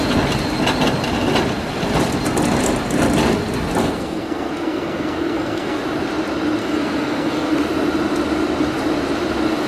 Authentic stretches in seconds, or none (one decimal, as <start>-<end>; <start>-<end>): 0.0-3.8; 5.8-6.6; 7.5-9.7

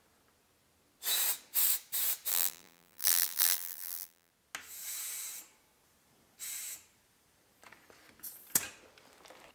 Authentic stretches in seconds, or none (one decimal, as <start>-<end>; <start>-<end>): 0.0-2.3; 4.3-9.5